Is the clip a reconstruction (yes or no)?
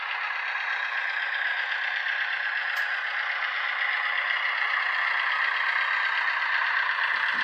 no